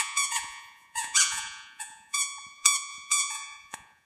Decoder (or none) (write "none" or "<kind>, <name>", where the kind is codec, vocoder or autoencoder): vocoder, Vocos